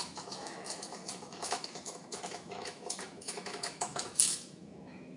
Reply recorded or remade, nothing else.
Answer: remade